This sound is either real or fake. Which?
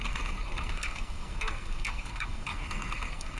fake